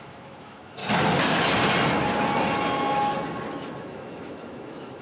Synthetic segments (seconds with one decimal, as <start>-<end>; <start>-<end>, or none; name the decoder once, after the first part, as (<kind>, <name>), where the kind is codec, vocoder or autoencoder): 0.0-0.8 (autoencoder, DAC-VAE); 3.8-5.0